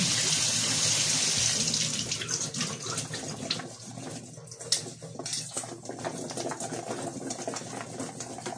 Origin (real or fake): real